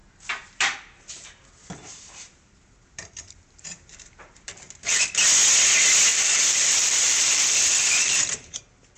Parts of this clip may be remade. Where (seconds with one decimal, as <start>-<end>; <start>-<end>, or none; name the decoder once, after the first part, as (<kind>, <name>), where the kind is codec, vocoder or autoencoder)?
0.0-5.0 (vocoder, BigVGAN v2); 6.1-8.6